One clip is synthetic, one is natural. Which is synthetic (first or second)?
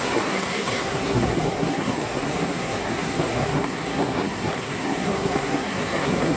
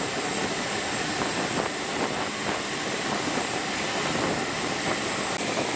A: first